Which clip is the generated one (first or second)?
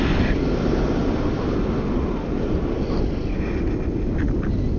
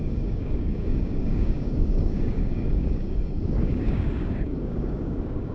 second